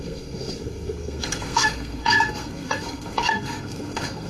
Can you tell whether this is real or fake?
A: fake